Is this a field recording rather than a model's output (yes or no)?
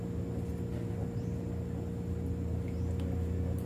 yes